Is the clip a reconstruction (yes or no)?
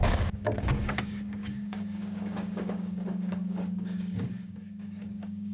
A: yes